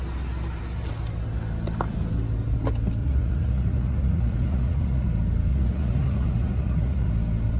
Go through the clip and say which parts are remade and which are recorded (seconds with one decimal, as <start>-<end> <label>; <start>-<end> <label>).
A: 0.0-3.0 recorded; 3.0-5.1 remade; 5.1-5.5 recorded; 5.5-7.1 remade; 7.1-7.6 recorded